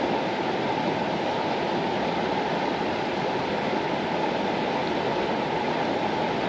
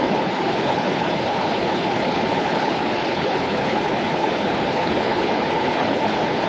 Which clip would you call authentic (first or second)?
first